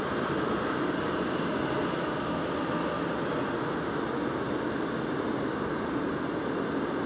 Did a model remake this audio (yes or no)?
no